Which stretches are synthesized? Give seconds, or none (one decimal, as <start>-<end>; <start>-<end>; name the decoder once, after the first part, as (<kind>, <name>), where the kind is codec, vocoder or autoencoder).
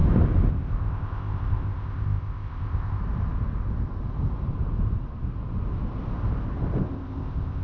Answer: 0.5-3.0 (codec, ZipCodec); 6.8-7.6